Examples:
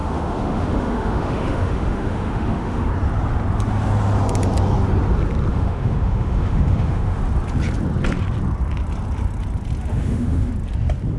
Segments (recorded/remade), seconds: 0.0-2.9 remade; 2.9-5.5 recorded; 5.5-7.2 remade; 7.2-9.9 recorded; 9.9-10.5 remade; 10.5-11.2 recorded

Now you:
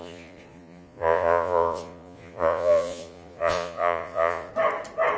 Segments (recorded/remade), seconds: 0.0-4.5 remade; 4.5-5.2 recorded

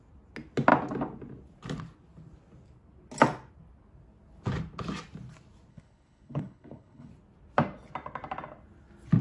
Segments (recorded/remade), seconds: 0.0-5.7 recorded; 5.7-7.1 remade; 7.1-9.2 recorded

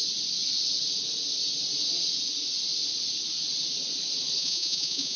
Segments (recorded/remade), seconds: 0.0-4.4 recorded; 4.4-5.2 remade

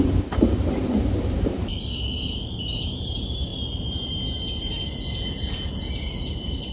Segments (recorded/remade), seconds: 0.0-1.7 remade; 1.7-2.5 recorded; 2.5-3.5 remade; 3.5-5.7 recorded; 5.7-6.7 remade

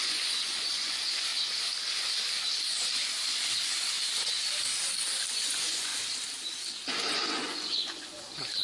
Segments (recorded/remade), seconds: 0.0-1.3 remade; 1.3-5.3 recorded; 5.3-5.9 remade; 5.9-6.7 recorded; 6.7-8.6 remade